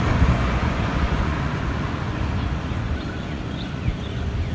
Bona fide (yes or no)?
no